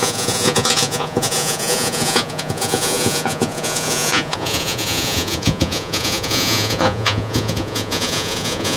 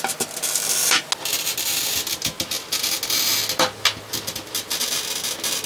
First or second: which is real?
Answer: second